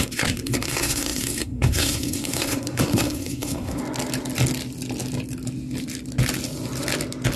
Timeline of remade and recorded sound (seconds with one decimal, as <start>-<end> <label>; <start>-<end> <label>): 0.0-3.8 remade; 3.8-7.4 recorded